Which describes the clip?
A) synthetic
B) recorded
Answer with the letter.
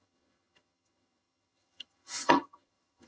A